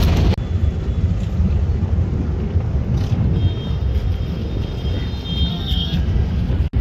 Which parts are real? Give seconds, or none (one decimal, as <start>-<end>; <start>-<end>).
0.0-5.5; 6.0-6.8